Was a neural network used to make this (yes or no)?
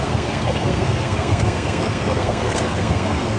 yes